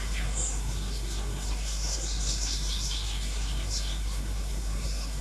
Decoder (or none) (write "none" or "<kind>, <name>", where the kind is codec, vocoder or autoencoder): codec, SNAC